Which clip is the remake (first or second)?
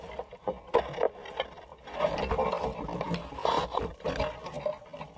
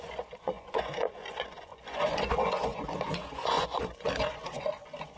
second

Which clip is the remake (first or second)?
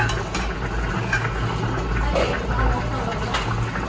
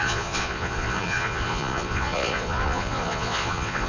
second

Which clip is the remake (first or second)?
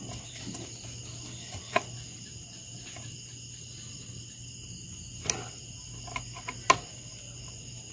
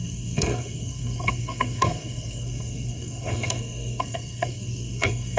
second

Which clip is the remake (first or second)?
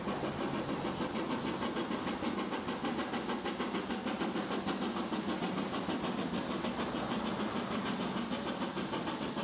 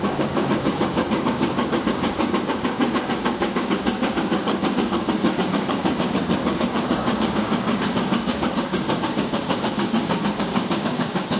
second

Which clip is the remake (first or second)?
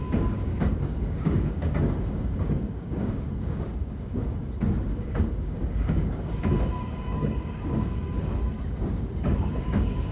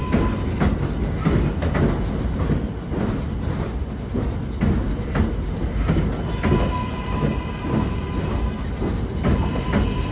first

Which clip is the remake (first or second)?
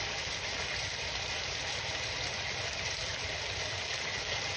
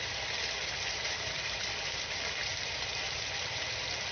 first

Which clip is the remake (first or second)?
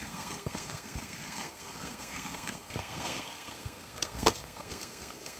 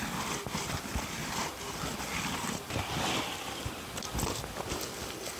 first